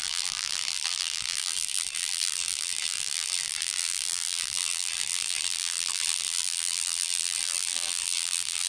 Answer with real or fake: fake